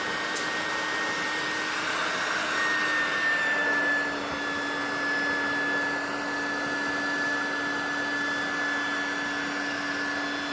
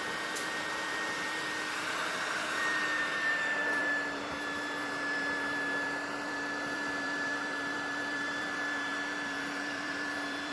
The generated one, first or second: second